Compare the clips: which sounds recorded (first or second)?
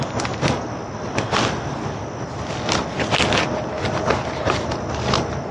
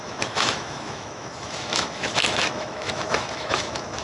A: first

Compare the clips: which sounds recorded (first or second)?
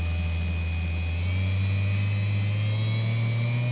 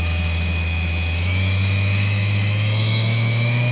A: first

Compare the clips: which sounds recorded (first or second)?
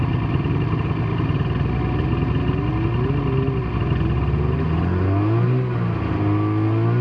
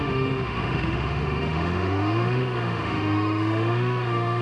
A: first